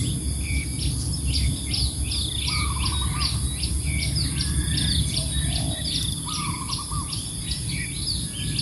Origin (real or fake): real